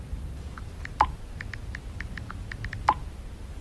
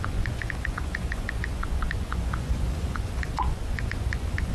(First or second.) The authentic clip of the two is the first